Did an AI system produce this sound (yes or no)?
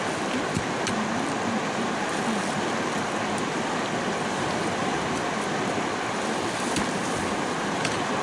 no